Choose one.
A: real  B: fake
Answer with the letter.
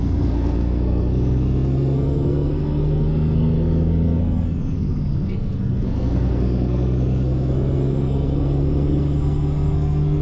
B